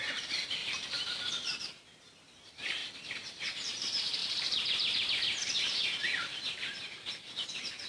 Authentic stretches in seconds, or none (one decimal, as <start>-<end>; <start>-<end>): 0.6-1.3